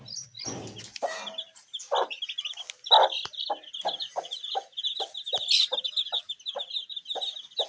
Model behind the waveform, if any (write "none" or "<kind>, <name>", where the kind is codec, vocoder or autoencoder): none